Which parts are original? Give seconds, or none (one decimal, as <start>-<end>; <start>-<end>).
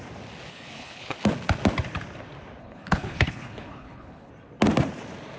0.0-0.5; 1.2-2.6; 4.3-5.4